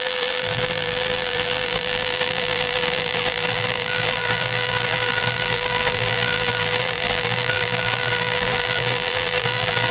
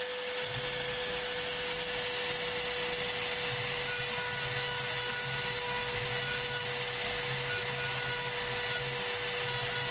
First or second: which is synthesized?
first